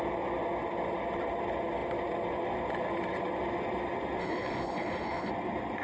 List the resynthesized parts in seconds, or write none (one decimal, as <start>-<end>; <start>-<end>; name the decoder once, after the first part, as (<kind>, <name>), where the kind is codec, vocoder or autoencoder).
4.2-5.3 (codec, HILCodec)